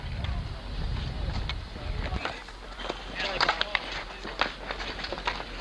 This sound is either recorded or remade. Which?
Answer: recorded